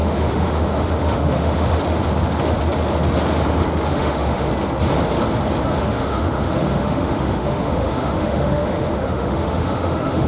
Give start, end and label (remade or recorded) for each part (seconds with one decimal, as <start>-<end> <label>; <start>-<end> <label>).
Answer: 0.0-1.8 remade; 1.8-3.9 recorded; 3.9-4.5 remade; 4.5-5.8 recorded; 5.8-10.3 remade